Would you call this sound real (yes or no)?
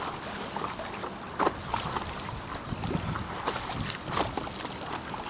yes